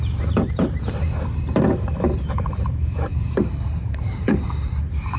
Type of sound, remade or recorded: remade